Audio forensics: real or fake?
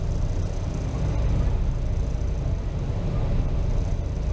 real